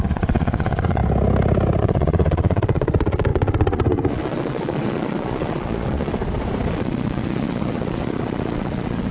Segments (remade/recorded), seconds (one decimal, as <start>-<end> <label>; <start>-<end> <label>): 0.0-1.0 remade; 1.0-1.8 recorded; 1.8-6.2 remade; 6.2-6.7 recorded; 6.7-9.1 remade